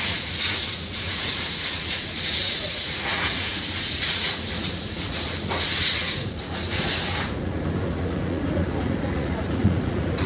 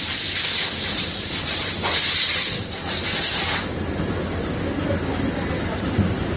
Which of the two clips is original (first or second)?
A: second